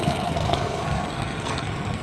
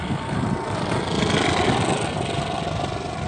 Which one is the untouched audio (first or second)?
second